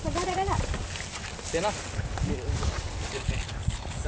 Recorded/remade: recorded